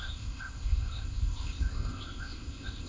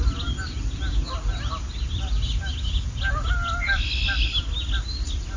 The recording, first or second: second